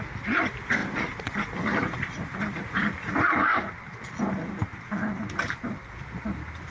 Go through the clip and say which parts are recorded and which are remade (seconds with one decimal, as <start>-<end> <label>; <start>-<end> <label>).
0.0-3.5 remade; 3.5-6.2 recorded; 6.2-6.7 remade